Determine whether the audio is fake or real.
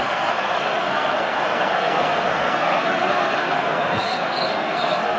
fake